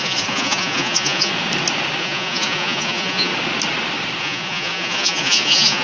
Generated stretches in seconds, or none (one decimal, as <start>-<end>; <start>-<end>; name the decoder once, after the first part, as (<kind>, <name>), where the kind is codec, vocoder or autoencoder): 0.0-1.3 (vocoder, Vocos); 2.0-3.3; 4.2-5.8

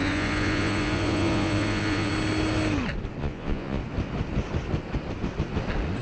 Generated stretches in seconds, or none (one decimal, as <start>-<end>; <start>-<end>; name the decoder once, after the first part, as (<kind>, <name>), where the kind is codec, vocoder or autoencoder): 0.0-2.1 (vocoder, Vocos); 3.2-3.8

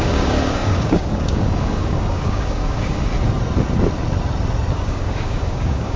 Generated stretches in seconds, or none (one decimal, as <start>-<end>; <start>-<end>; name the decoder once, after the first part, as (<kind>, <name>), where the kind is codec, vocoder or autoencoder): 0.0-3.1 (codec, DAC); 4.7-6.0

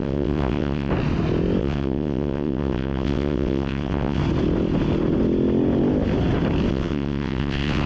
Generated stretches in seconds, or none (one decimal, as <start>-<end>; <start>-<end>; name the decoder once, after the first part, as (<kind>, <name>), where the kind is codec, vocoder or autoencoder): 0.0-0.9 (vocoder, WaveNeXt); 1.6-4.2; 6.7-7.9

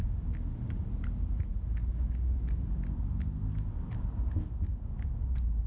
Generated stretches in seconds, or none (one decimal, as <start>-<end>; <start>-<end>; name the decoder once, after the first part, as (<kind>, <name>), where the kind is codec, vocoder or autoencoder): none

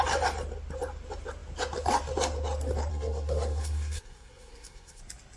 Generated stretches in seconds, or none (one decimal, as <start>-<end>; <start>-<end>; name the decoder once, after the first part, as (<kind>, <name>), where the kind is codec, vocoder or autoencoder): 2.9-5.0 (codec, SNAC)